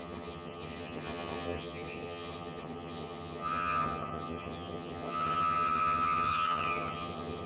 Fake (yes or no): yes